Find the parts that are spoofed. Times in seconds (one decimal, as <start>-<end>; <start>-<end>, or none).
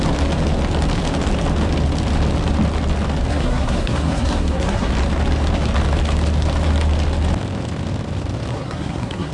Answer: 3.3-4.9; 8.5-9.3